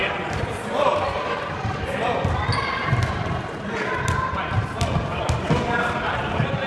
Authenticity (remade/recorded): recorded